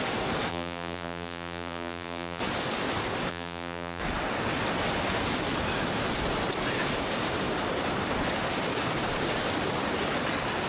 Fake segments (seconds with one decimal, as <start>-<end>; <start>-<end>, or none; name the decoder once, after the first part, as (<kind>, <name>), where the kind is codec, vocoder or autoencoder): 0.5-2.4 (vocoder, BigVGAN v2); 3.3-4.0